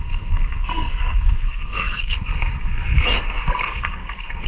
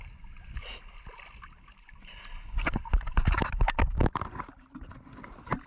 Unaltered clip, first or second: second